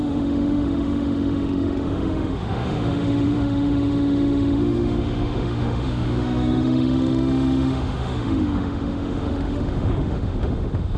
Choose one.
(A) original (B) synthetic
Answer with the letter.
B